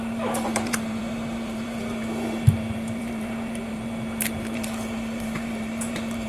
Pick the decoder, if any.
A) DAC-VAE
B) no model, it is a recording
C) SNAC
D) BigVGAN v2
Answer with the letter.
D